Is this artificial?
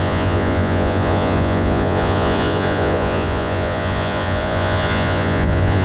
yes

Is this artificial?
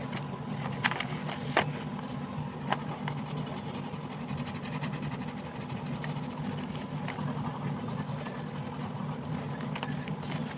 no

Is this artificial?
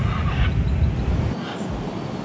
no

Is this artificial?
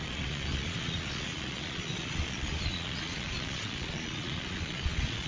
yes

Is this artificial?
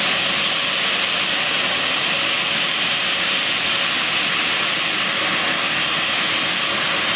no